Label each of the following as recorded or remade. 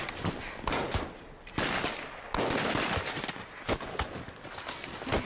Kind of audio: recorded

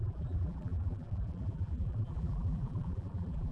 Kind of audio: remade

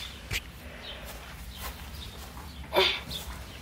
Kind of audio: remade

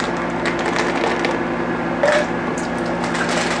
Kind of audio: recorded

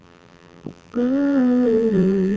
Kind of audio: remade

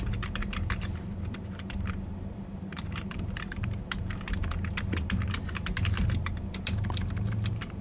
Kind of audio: remade